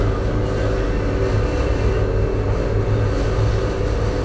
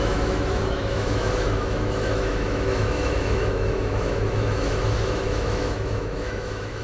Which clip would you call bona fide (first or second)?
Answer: first